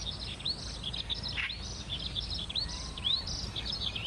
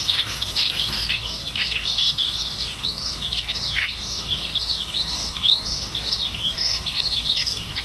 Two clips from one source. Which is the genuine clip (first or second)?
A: first